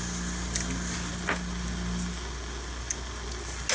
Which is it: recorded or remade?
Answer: recorded